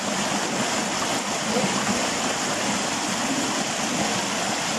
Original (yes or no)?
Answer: yes